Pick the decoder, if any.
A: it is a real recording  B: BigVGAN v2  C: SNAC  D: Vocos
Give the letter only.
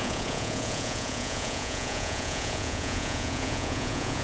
D